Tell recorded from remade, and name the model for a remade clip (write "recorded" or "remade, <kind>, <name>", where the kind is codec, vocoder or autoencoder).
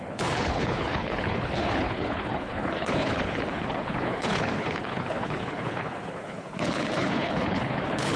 remade, codec, HILCodec